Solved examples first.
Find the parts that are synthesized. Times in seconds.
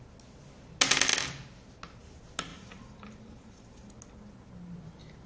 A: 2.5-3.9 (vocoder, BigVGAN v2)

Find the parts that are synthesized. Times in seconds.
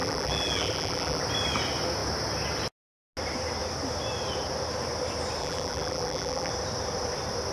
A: 0.0-1.2 (vocoder, BigVGAN v2); 5.4-6.5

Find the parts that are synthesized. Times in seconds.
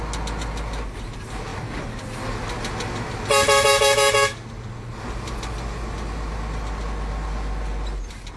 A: none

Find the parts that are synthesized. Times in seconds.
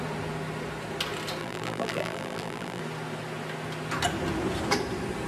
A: 1.4-2.8 (vocoder, BigVGAN v2)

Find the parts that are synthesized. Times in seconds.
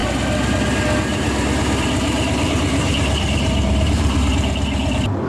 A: 1.1-4.3 (vocoder, BigVGAN v2)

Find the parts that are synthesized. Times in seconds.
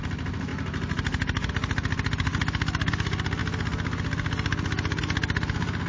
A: none